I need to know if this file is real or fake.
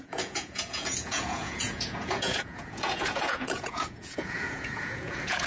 fake